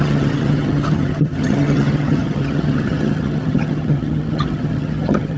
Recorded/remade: remade